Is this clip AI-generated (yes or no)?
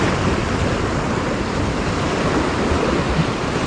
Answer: no